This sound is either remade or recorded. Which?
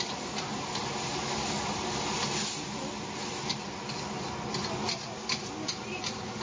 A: recorded